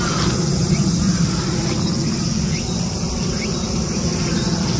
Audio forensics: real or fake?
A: real